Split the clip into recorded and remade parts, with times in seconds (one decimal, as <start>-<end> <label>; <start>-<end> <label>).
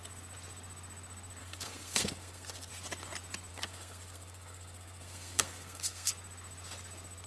0.0-1.4 recorded; 1.4-2.7 remade; 2.7-3.5 recorded; 3.5-6.1 remade; 6.1-7.3 recorded